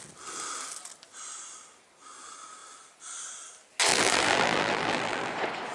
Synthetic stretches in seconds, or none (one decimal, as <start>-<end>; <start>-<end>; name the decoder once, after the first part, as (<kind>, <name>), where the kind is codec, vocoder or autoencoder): 3.9-5.3 (vocoder, BigVGAN v2)